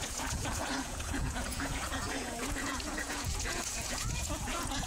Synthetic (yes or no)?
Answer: yes